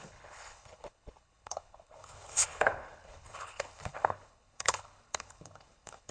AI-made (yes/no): yes